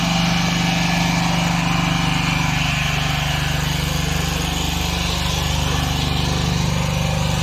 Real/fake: real